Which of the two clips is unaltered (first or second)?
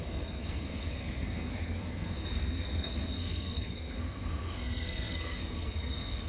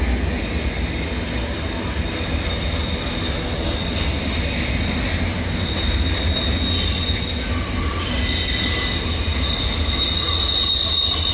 second